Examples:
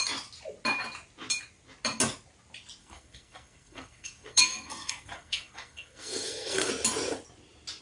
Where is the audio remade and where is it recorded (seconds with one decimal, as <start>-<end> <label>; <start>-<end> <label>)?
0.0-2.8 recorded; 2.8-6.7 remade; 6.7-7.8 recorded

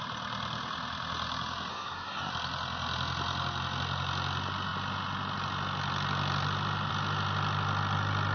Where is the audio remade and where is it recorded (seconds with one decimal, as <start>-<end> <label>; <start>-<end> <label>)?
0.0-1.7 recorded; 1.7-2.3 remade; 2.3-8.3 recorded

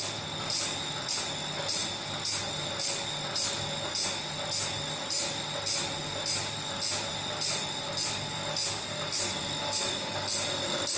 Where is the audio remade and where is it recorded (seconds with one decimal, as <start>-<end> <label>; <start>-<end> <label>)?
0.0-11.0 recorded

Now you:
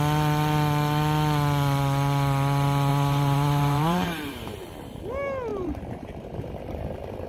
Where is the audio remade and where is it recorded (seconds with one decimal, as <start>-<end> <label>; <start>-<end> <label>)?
0.0-2.9 recorded; 2.9-5.0 remade; 5.0-5.5 recorded; 5.5-6.3 remade; 6.3-7.3 recorded

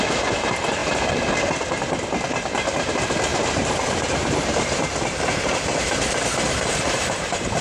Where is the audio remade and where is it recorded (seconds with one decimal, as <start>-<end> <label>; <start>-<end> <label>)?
0.0-0.8 recorded; 0.8-1.5 remade; 1.5-3.3 recorded; 3.3-7.6 remade

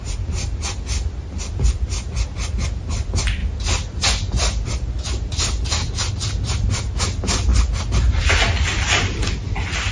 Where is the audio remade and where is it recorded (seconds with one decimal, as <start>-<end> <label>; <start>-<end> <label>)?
0.0-9.9 recorded

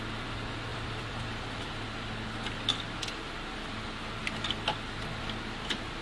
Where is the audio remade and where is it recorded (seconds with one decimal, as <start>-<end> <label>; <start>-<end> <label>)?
0.0-0.7 recorded; 0.7-1.8 remade; 1.8-6.0 recorded